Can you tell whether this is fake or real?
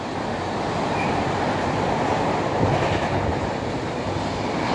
real